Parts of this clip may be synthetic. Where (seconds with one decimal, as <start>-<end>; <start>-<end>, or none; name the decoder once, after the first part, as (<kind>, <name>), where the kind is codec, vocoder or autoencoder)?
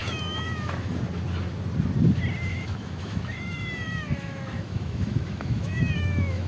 0.0-0.9 (autoencoder, DAC-VAE); 2.5-6.5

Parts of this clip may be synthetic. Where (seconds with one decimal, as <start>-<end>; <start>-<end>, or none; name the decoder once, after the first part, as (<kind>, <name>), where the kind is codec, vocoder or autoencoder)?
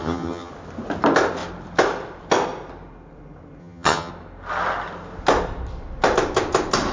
0.0-0.5 (vocoder, HiFi-GAN); 3.6-4.1